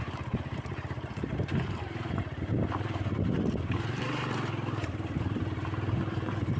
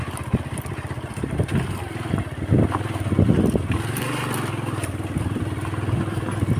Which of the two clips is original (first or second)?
second